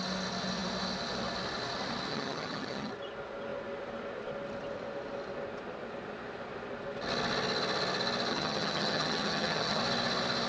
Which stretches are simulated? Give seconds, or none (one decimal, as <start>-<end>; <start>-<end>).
2.1-2.9; 8.3-9.8